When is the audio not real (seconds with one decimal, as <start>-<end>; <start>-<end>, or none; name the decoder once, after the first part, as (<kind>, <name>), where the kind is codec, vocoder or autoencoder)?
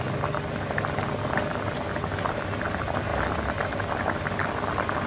none